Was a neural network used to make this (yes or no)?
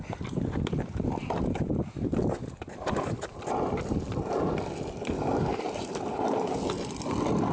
no